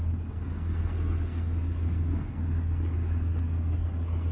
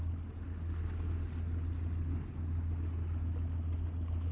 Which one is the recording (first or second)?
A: second